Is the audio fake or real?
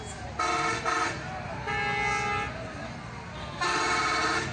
real